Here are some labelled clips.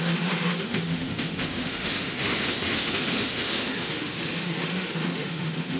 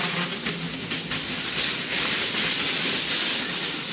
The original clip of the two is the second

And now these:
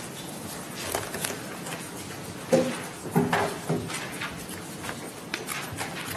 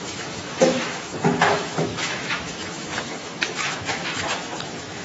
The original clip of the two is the first